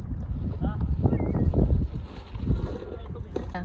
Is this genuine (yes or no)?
yes